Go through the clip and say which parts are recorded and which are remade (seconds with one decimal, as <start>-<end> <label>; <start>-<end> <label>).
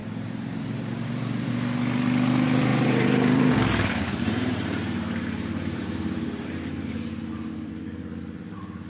0.0-1.5 remade; 1.5-2.7 recorded; 2.7-7.7 remade; 7.7-8.9 recorded